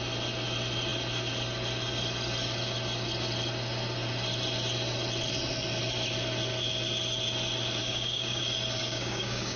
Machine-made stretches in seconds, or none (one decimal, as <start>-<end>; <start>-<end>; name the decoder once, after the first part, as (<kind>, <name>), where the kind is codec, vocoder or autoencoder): 7.8-8.4 (codec, DAC); 8.8-9.6